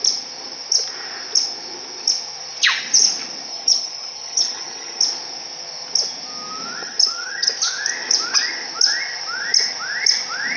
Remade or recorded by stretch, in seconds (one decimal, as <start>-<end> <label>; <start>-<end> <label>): 0.0-3.5 recorded; 3.5-5.0 remade; 5.0-6.8 recorded; 6.8-7.5 remade; 7.5-10.6 recorded

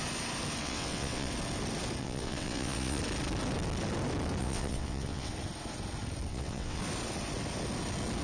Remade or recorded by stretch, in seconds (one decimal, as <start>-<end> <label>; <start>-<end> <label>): 0.0-0.6 recorded; 0.6-1.3 remade; 1.3-2.0 recorded; 2.0-3.0 remade; 3.0-4.4 recorded; 4.4-5.3 remade; 5.3-6.3 recorded; 6.3-6.8 remade; 6.8-8.2 recorded

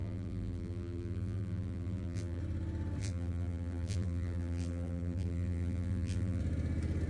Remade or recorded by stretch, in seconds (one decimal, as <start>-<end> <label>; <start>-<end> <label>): 0.0-2.4 remade; 2.4-3.0 recorded; 3.0-6.4 remade; 6.4-7.1 recorded

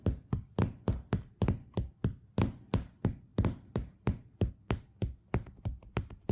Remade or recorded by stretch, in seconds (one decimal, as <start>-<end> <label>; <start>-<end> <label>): 0.0-3.3 recorded; 3.3-4.5 remade; 4.5-6.3 recorded

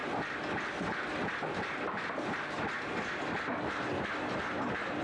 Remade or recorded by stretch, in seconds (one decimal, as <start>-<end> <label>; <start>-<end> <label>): 0.0-5.0 recorded

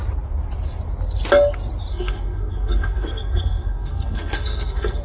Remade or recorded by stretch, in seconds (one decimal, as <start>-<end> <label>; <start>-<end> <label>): 0.0-1.9 recorded; 1.9-5.0 remade

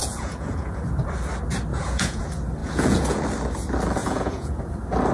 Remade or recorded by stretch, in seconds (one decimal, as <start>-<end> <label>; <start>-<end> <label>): 0.0-0.8 remade; 0.8-1.7 recorded; 1.7-2.2 remade; 2.2-2.6 recorded; 2.6-3.2 remade; 3.2-4.0 recorded; 4.0-4.6 remade; 4.6-5.1 recorded